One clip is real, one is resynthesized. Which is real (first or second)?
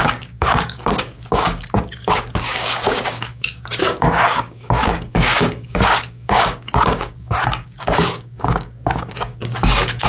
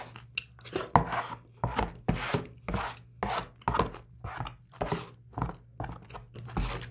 second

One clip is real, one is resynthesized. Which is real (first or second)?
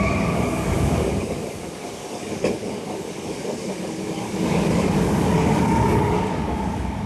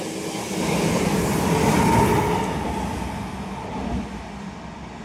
second